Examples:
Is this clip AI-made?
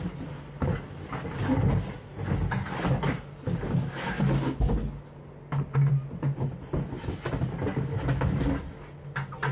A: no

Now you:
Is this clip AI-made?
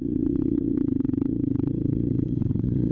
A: yes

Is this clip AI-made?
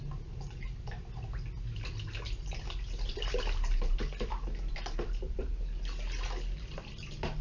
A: no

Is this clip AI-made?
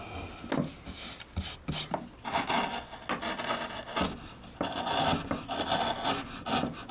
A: no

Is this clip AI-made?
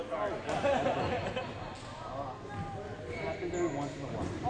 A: no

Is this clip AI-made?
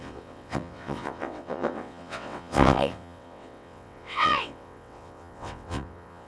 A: yes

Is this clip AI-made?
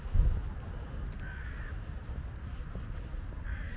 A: no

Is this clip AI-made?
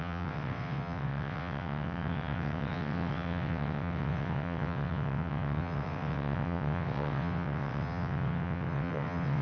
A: yes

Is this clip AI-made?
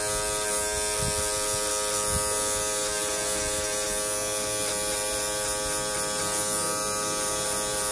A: no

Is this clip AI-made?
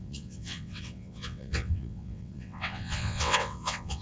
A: yes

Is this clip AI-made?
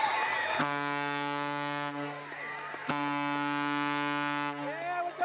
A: no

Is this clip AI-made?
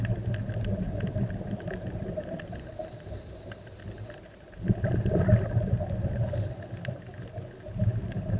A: no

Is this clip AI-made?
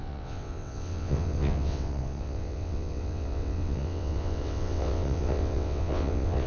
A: yes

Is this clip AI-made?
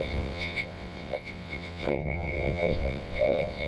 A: yes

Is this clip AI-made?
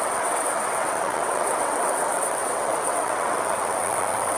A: yes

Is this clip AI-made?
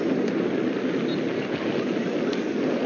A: no